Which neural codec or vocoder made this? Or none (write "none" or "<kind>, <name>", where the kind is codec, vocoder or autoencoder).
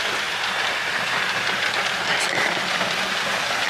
none